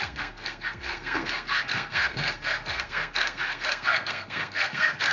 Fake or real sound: fake